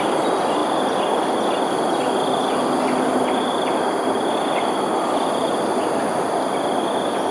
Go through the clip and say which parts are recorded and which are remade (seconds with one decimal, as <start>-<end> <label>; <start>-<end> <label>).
0.0-7.3 recorded